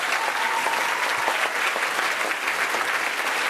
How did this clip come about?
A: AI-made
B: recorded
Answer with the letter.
B